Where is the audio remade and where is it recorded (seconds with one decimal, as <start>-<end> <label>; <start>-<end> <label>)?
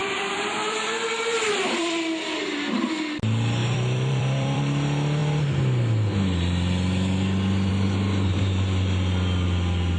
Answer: 0.0-1.2 remade; 1.2-3.6 recorded; 3.6-4.6 remade; 4.6-10.0 recorded